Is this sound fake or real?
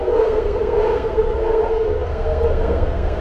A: fake